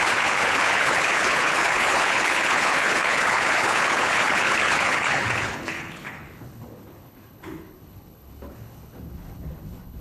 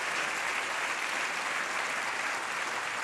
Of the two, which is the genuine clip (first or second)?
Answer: second